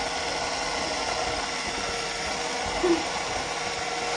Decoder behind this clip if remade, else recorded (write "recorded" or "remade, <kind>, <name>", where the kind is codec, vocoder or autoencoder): recorded